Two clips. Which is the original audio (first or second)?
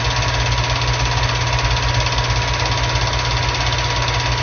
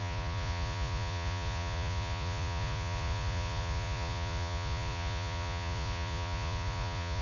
first